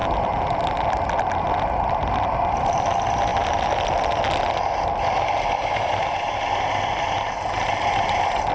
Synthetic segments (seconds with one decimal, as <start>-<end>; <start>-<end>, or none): none